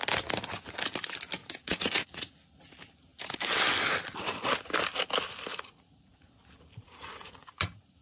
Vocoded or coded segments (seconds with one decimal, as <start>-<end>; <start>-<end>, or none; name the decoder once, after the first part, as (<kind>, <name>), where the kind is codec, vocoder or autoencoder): 1.4-2.3 (vocoder, Vocos); 5.5-6.3; 6.7-8.0